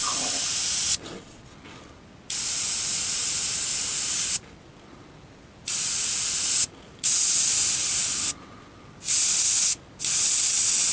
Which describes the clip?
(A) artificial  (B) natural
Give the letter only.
B